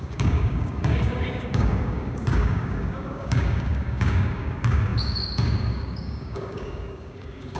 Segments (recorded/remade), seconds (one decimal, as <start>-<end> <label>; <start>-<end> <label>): 0.0-7.6 remade